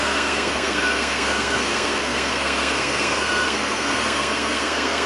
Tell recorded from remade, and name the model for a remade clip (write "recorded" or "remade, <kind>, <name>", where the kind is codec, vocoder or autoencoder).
remade, codec, SNAC